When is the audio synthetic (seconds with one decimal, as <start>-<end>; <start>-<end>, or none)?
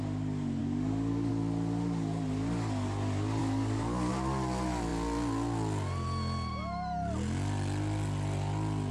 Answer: 0.6-1.3; 3.4-4.1